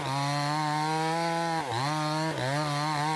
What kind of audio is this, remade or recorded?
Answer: recorded